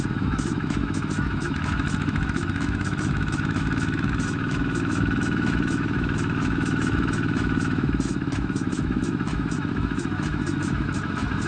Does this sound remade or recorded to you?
remade